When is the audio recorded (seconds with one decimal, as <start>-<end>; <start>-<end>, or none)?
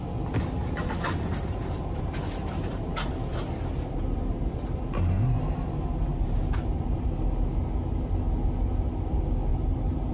0.0-0.6; 3.1-3.7; 4.4-6.1; 7.0-9.5